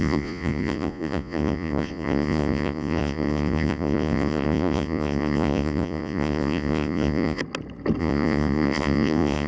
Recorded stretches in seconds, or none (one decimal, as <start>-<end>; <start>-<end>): 7.4-8.0